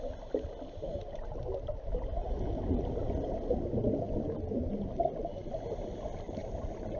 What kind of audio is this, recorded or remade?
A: recorded